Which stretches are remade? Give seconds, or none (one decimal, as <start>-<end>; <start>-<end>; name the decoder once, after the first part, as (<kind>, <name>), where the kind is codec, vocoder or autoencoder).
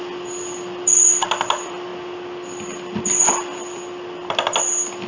none